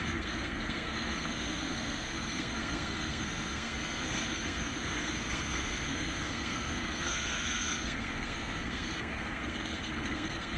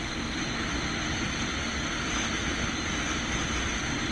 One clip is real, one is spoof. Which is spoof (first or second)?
first